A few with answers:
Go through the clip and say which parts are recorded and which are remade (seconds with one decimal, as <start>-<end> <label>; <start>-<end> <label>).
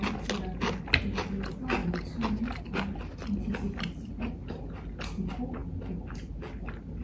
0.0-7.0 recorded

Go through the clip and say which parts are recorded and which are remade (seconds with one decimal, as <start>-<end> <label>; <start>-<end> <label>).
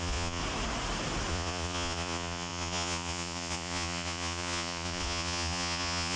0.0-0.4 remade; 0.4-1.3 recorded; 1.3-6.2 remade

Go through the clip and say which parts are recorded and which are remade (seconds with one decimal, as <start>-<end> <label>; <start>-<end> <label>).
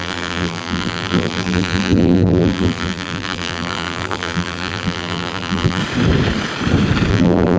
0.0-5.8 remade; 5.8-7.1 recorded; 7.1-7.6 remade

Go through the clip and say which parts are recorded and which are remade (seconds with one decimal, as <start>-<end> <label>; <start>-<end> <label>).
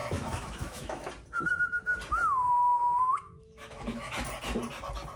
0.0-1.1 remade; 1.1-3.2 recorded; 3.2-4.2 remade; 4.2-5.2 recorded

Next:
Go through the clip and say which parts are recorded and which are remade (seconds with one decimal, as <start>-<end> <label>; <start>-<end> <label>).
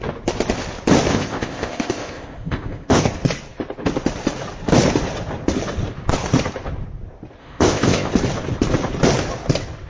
0.0-1.1 recorded; 1.1-3.1 remade; 3.1-7.4 recorded; 7.4-8.1 remade; 8.1-9.9 recorded